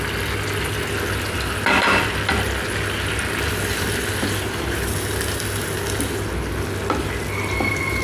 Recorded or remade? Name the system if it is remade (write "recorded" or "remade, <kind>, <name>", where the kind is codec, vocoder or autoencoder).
recorded